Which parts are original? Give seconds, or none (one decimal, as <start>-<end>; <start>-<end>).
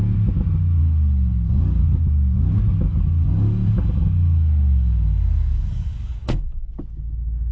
0.0-0.8; 2.0-2.9; 6.7-7.5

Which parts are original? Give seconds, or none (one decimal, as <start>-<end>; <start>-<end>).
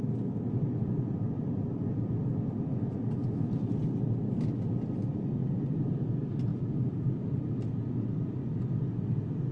0.0-6.5; 7.1-9.5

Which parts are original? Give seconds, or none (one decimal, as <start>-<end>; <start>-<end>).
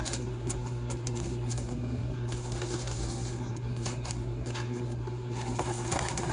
none